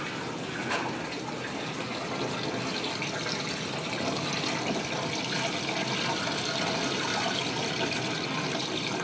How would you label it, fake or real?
real